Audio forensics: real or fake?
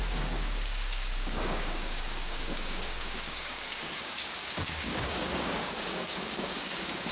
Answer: fake